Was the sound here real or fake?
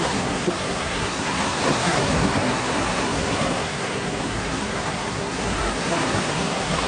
fake